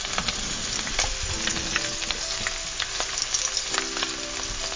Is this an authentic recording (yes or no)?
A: yes